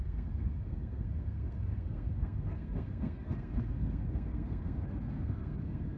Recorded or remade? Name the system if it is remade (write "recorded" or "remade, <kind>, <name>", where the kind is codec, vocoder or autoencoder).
remade, codec, SNAC